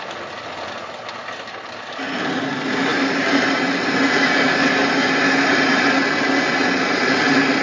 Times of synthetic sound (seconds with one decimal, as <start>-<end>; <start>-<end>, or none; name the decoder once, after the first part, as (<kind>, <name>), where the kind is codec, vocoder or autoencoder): none